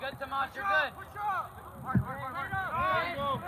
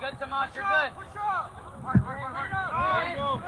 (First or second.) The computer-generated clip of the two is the second